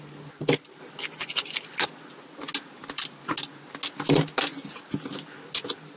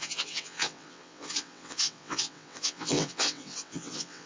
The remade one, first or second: second